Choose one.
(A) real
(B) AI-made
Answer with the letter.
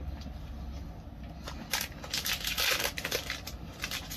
A